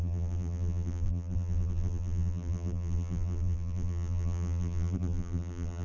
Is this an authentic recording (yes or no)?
no